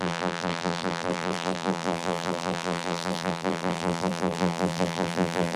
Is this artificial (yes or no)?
yes